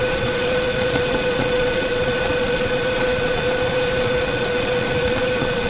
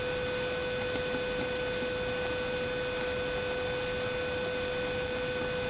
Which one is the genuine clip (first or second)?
second